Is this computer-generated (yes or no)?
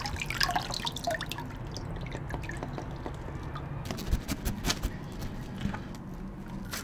no